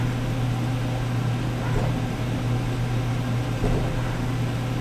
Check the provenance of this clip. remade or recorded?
recorded